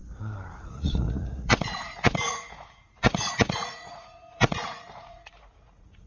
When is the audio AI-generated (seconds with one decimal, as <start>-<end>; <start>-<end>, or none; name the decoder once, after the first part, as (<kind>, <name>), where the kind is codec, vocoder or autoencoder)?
0.7-6.1 (vocoder, Vocos)